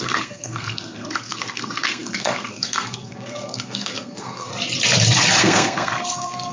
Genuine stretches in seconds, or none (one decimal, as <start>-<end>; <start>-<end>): 4.5-5.4